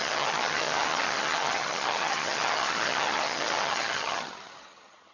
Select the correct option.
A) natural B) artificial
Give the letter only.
B